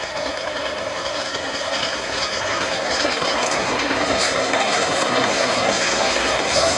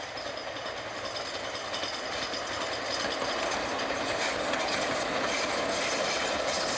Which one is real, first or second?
second